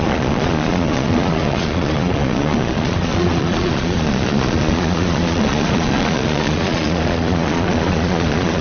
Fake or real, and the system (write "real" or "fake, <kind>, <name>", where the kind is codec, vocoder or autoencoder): fake, vocoder, Vocos